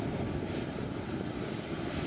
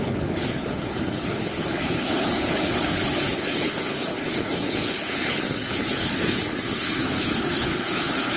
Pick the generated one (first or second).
second